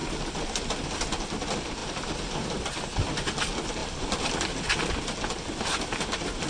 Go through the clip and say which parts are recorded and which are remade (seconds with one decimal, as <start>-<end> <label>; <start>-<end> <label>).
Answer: 0.0-1.8 recorded; 1.8-2.5 remade; 2.5-3.8 recorded; 3.8-4.8 remade; 4.8-6.5 recorded